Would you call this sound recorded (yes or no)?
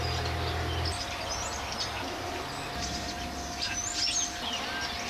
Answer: yes